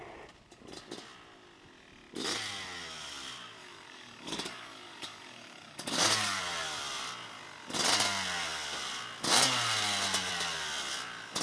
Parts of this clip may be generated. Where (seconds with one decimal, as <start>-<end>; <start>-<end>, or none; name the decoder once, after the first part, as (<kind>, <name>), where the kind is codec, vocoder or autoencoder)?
3.6-6.4 (codec, DAC)